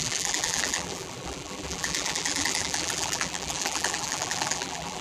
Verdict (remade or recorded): remade